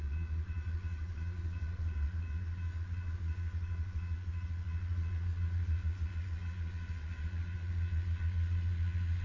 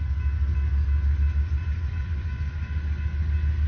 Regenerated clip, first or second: first